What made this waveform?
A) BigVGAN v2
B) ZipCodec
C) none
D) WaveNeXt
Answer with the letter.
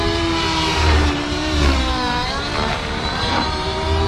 A